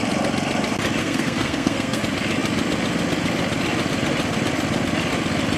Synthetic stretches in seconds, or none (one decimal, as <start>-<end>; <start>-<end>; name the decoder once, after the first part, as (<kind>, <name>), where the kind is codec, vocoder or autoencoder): 1.0-2.0 (codec, SNAC)